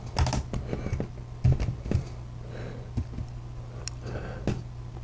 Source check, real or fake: real